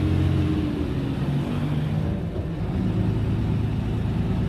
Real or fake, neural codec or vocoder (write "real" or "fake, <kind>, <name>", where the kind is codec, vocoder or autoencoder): real